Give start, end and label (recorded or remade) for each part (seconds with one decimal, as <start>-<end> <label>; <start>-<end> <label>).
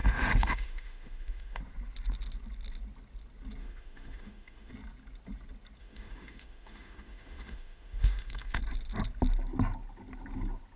0.0-1.6 remade; 1.6-3.6 recorded; 3.6-4.7 remade; 4.7-5.8 recorded; 5.8-8.6 remade; 8.6-10.8 recorded